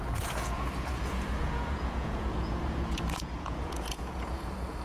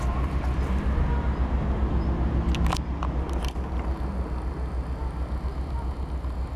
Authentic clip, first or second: second